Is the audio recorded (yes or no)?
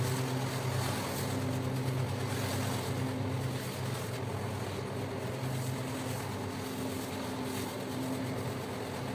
yes